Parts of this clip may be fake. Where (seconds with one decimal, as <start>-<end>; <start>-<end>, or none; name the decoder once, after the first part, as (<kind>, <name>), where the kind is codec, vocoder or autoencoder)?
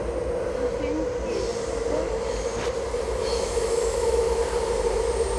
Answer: 3.2-4.4 (autoencoder, DAC-VAE)